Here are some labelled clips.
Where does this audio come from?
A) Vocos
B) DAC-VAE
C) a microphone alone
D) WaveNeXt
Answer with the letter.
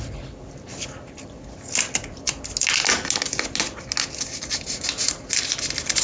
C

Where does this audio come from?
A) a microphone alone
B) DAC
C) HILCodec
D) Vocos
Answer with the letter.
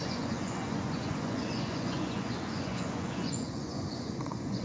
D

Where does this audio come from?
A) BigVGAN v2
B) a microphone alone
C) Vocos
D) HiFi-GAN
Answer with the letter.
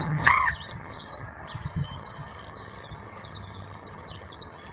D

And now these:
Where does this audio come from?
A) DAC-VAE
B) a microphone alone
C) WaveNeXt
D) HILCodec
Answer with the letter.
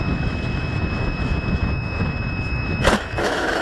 A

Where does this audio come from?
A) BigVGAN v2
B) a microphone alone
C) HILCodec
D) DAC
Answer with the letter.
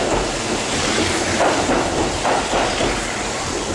A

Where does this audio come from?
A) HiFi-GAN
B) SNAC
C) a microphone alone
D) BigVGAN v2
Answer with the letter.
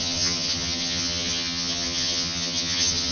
A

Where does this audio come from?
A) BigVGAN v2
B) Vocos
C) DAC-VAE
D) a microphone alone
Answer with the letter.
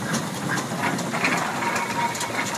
D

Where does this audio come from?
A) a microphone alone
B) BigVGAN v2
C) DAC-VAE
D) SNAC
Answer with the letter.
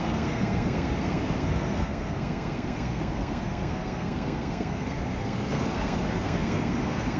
D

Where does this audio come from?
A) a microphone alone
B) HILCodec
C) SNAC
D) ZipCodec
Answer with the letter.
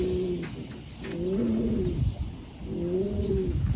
A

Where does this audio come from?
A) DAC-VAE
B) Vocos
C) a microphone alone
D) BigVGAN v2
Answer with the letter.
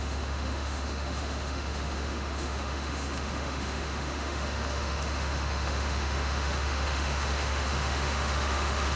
A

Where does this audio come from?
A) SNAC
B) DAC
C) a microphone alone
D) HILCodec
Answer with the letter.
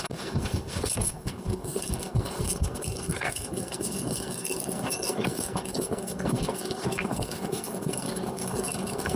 A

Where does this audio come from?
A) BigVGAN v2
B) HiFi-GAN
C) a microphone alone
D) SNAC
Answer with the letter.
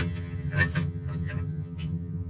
B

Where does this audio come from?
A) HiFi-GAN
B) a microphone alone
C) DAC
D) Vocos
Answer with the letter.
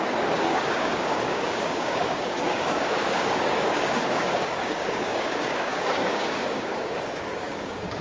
C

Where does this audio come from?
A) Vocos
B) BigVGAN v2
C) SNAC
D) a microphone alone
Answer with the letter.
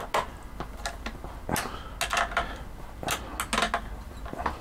D